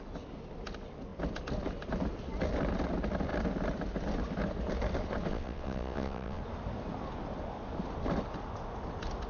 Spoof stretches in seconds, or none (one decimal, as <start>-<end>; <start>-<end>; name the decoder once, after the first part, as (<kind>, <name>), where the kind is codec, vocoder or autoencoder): 5.3-6.4 (vocoder, WaveNeXt)